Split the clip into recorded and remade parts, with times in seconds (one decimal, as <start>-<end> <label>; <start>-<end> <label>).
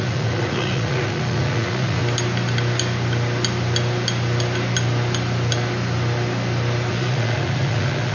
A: 0.0-2.0 remade; 2.0-6.9 recorded; 6.9-8.1 remade